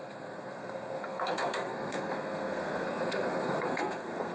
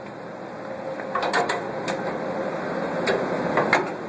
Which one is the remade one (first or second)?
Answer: first